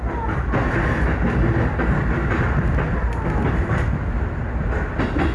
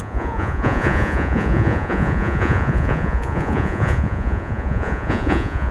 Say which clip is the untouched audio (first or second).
first